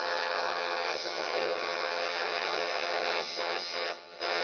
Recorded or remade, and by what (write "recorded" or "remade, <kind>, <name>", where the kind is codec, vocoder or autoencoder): remade, vocoder, HiFi-GAN